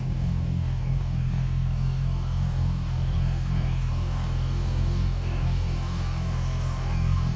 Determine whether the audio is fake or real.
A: fake